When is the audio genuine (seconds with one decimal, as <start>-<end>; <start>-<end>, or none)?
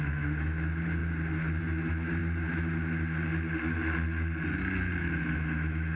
1.0-1.6; 2.2-5.0